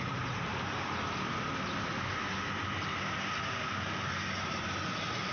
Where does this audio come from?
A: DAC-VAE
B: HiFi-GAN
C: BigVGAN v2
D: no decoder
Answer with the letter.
D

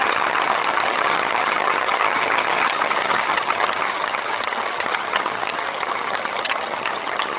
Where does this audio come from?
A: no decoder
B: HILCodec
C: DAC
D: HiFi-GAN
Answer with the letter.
D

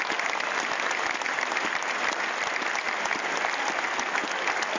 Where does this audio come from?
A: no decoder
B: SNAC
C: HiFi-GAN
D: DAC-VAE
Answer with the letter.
A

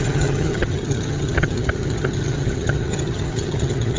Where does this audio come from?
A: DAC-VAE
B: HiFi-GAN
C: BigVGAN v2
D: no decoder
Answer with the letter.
B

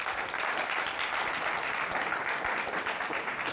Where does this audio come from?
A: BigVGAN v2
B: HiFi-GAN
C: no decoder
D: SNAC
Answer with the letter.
C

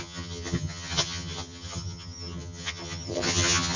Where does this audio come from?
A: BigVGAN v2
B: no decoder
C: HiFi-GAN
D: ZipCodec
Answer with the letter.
C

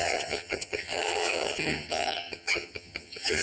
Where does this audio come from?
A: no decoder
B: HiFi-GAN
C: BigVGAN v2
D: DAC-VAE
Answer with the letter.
B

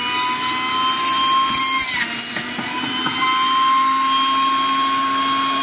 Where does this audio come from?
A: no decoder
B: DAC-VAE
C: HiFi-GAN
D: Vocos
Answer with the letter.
A